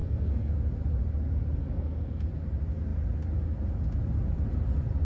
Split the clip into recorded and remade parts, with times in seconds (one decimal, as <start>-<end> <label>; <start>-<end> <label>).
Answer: 0.0-0.5 remade; 0.5-1.6 recorded; 1.6-2.3 remade; 2.3-5.0 recorded